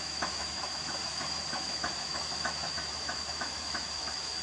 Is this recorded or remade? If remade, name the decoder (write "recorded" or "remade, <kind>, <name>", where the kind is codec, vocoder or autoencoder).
remade, autoencoder, DAC-VAE